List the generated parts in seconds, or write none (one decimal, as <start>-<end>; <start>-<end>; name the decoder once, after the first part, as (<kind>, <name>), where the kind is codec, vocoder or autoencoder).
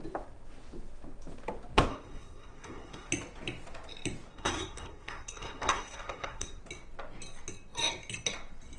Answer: 1.9-3.1 (codec, SNAC); 4.3-6.6